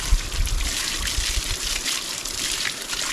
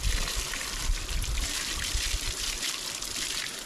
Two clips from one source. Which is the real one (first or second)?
first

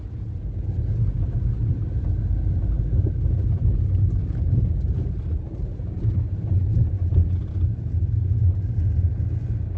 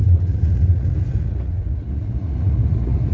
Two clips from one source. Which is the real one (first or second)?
first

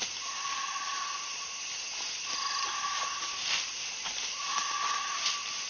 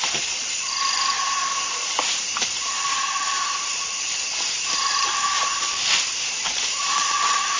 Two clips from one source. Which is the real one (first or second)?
first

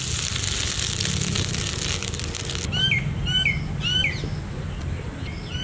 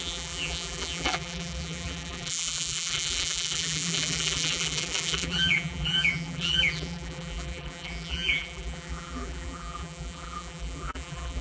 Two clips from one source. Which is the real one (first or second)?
first